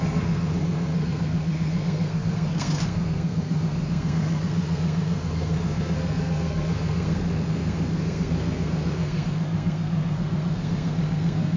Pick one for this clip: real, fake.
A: fake